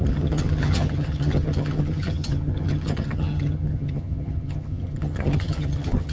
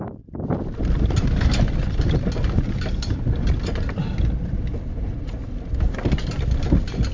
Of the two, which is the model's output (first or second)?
first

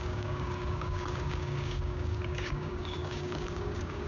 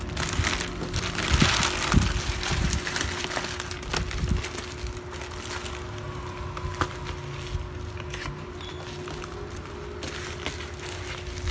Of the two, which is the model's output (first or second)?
first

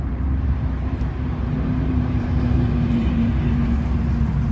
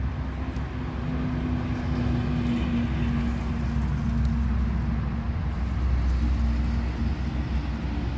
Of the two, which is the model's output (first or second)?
first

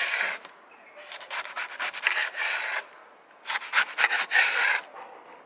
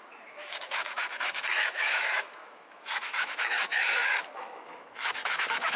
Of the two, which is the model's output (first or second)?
second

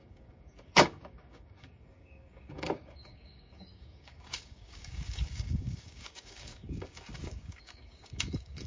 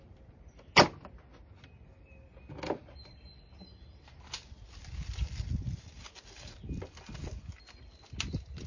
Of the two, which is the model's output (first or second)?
first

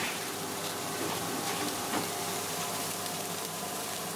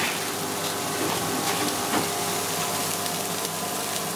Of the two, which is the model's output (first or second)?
first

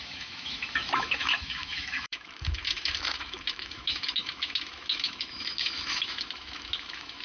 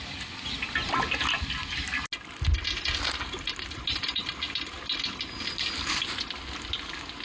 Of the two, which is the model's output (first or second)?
first